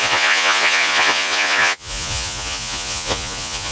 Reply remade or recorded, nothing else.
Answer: remade